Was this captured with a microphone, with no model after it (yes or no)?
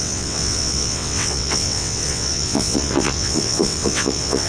no